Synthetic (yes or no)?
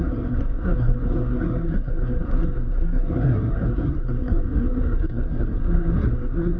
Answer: yes